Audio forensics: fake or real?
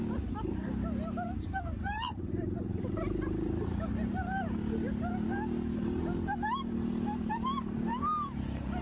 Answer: fake